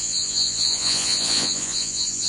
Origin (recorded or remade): remade